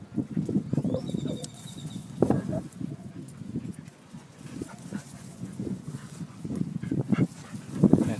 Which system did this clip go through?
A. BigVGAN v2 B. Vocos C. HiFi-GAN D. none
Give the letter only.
B